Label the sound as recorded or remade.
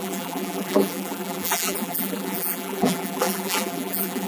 remade